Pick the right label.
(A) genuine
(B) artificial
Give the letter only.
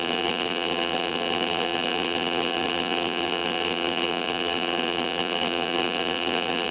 B